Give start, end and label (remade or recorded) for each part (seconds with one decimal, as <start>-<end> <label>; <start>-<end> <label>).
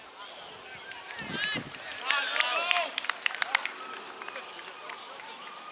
0.0-2.5 recorded; 2.5-3.3 remade; 3.3-5.7 recorded